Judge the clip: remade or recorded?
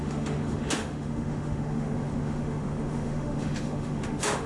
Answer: remade